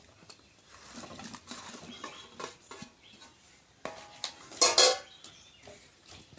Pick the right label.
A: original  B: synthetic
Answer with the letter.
A